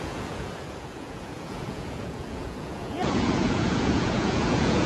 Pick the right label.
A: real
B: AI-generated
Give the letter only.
B